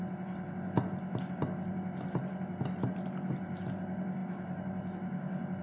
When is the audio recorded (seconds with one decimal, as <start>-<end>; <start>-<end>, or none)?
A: 0.0-5.6